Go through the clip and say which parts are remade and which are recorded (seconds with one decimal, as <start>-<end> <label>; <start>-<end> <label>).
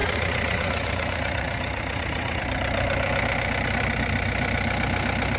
0.0-2.4 remade; 2.4-5.4 recorded